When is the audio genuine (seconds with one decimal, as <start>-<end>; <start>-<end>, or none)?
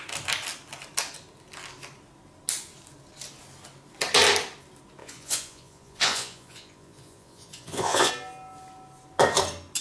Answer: 0.0-5.0; 8.1-9.8